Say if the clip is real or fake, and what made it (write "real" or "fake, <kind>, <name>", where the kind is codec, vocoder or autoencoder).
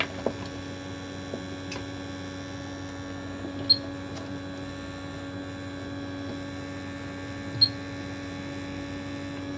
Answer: real